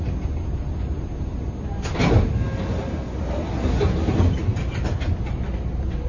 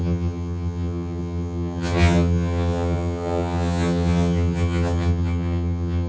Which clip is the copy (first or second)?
second